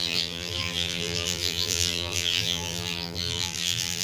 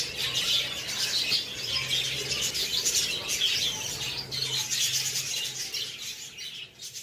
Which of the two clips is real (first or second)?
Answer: second